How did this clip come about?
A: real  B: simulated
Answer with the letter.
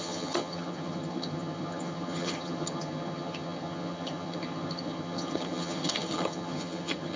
B